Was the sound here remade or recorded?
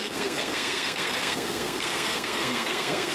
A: remade